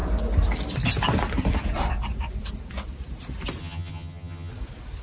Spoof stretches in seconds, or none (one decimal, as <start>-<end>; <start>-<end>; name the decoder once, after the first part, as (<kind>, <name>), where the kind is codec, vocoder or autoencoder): 3.6-4.5 (vocoder, HiFi-GAN)